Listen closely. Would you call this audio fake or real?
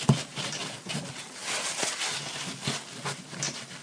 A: real